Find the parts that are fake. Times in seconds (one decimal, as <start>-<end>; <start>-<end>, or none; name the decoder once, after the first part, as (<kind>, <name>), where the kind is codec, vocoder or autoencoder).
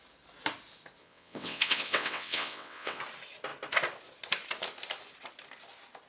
1.0-3.0 (vocoder, WaveNeXt)